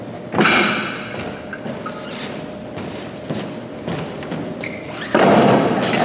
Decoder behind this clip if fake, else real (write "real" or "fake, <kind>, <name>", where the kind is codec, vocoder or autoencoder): real